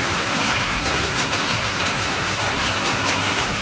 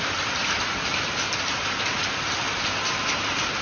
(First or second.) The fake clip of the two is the first